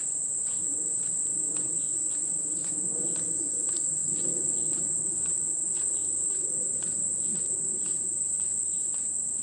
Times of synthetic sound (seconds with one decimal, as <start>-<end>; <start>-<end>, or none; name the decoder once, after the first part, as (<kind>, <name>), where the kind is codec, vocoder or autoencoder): 0.0-4.0 (vocoder, Vocos); 4.7-9.4